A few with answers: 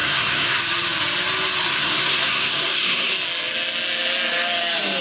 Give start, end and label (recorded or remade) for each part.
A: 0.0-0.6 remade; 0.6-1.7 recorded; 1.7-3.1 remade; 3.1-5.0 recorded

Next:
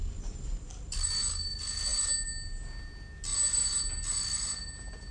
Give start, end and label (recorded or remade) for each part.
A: 0.0-1.1 remade; 1.1-5.1 recorded

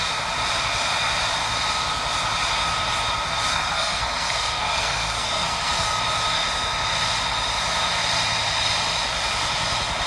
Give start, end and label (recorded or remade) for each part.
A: 0.0-3.5 recorded; 3.5-6.0 remade; 6.0-10.1 recorded